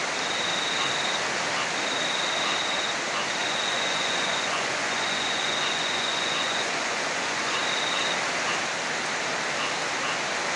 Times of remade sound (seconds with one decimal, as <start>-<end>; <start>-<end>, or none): 3.4-7.6